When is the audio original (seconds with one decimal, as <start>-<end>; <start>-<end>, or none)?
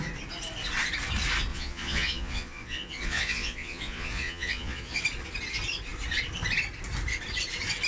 0.0-1.5; 5.0-7.9